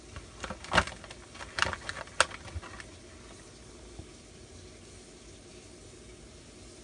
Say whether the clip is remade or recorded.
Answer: recorded